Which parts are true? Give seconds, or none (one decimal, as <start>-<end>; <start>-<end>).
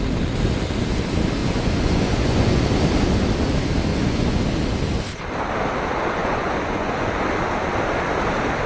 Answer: 0.0-1.4; 2.6-3.9; 4.4-6.2; 7.1-8.7